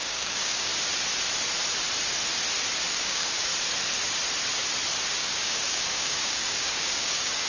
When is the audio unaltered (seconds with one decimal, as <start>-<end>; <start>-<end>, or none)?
0.7-2.9; 3.5-5.2

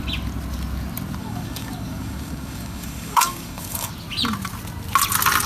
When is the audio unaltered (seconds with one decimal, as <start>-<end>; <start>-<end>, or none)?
0.0-1.2; 3.9-5.5

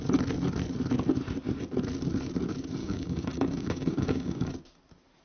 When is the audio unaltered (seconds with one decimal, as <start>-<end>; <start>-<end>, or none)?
0.0-2.8; 4.5-5.2

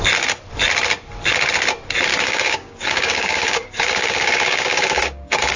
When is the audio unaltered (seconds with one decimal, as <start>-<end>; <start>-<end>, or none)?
0.0-2.1

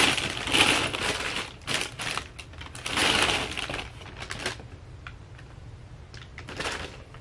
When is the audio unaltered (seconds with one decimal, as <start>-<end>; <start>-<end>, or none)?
0.0-7.2

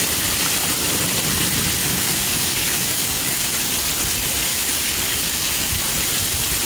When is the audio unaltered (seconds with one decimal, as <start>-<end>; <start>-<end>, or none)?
0.0-1.8; 3.5-4.5; 5.7-6.7

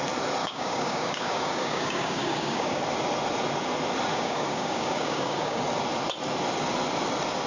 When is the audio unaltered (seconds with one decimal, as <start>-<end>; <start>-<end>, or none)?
0.0-0.4; 2.8-4.1; 5.6-7.5

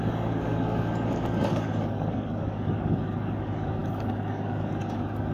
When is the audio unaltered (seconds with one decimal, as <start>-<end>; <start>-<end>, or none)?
none